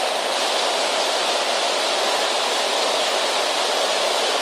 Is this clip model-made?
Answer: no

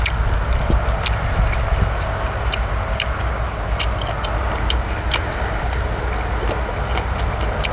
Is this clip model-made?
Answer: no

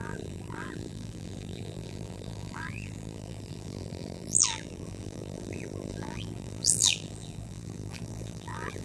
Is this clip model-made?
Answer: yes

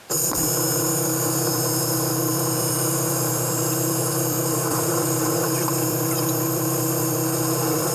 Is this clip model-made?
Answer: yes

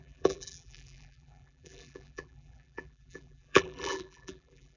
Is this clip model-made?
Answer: yes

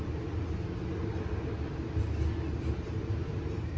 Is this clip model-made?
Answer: no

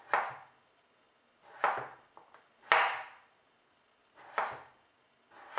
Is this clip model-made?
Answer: no